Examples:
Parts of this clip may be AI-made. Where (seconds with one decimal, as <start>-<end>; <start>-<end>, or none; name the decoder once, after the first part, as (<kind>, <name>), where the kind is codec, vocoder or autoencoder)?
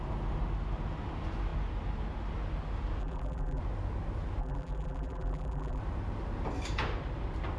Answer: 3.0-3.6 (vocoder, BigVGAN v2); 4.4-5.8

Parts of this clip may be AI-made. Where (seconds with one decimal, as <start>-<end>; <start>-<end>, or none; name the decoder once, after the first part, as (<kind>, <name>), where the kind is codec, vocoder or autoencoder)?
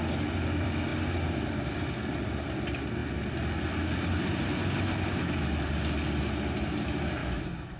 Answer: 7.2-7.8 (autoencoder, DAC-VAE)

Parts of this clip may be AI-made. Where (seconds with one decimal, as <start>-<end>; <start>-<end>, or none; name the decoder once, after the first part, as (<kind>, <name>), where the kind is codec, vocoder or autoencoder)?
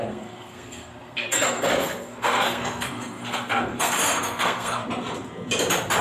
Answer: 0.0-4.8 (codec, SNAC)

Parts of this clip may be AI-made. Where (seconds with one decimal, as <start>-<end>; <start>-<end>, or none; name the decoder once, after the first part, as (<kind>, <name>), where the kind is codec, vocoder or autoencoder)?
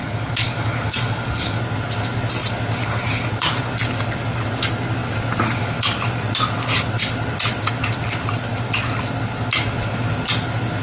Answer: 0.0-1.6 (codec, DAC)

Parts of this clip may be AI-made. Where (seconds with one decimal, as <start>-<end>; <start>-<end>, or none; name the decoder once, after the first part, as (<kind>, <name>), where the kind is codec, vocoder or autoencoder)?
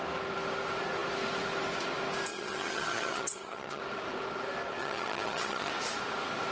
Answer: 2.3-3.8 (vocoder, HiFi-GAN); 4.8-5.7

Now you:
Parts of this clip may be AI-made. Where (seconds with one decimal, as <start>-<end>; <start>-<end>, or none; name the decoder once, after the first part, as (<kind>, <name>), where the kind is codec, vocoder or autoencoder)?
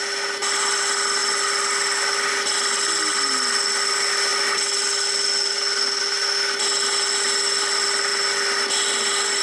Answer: none